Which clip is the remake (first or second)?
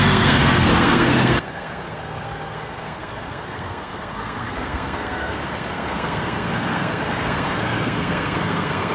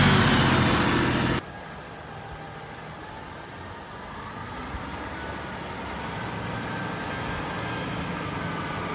first